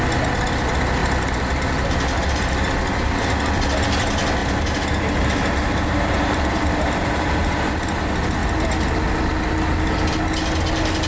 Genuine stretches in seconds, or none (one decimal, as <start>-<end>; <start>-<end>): 0.0-1.0; 2.3-4.4; 7.5-11.1